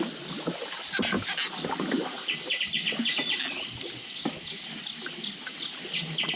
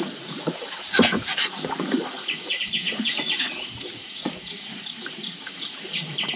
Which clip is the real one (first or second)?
first